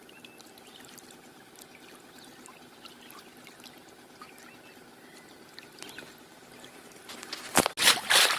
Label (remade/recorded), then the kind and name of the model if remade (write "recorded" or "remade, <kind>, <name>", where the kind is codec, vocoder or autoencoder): recorded